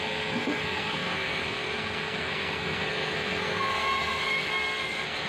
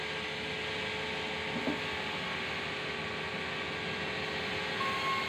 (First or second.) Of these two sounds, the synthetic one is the first